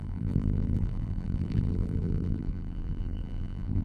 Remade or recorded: remade